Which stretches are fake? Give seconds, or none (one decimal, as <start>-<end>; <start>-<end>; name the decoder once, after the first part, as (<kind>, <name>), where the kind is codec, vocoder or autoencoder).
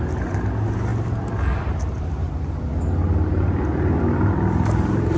none